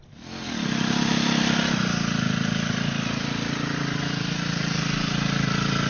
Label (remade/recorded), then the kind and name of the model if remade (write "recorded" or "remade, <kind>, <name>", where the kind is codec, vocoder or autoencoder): recorded